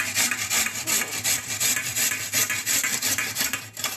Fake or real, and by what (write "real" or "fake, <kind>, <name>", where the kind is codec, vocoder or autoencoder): fake, vocoder, BigVGAN v2